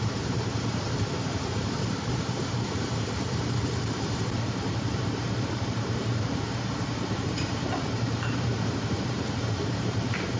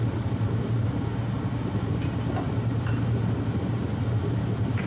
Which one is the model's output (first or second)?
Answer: first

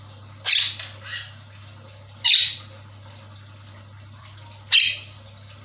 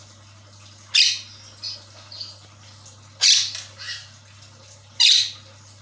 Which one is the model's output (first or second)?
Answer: first